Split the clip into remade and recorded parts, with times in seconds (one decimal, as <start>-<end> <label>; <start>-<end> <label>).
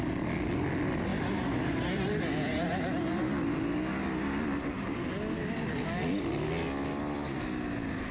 0.0-1.1 recorded; 1.1-3.1 remade; 3.1-8.1 recorded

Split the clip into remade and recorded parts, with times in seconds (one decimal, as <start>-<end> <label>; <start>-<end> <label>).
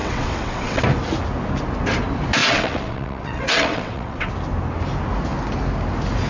0.0-0.8 remade; 0.8-2.4 recorded; 2.4-4.3 remade; 4.3-6.3 recorded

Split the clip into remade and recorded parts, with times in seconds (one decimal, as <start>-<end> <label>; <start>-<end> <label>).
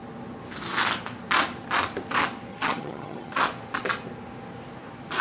0.0-2.5 recorded; 2.5-3.4 remade; 3.4-5.2 recorded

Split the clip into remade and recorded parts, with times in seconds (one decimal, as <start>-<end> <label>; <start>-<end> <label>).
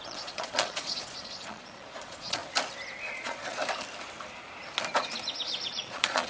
0.0-2.4 remade; 2.4-3.0 recorded; 3.0-3.6 remade; 3.6-5.7 recorded; 5.7-6.3 remade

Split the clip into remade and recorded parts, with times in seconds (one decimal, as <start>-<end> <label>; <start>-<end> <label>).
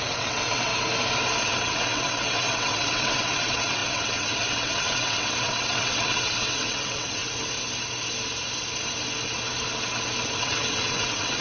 0.0-0.7 remade; 0.7-1.4 recorded; 1.4-7.2 remade; 7.2-10.4 recorded; 10.4-11.4 remade